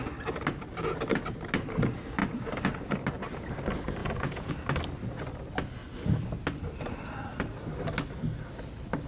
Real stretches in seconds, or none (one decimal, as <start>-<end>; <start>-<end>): 0.0-4.0; 4.5-9.1